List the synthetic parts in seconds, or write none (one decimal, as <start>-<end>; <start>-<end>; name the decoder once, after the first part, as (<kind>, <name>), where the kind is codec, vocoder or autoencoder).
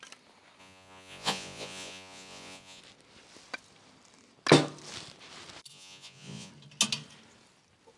0.6-2.8 (vocoder, Vocos); 5.7-6.5